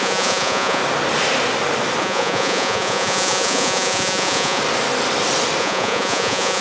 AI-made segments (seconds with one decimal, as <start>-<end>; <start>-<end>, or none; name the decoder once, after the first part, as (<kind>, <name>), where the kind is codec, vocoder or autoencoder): 0.0-0.8 (vocoder, Vocos); 2.0-4.6; 5.6-6.6